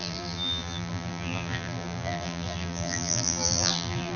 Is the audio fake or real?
fake